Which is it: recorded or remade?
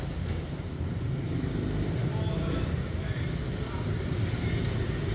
recorded